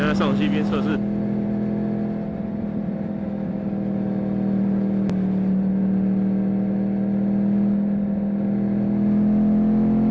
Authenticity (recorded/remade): recorded